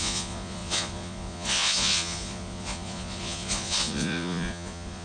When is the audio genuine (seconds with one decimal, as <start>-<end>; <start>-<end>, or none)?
none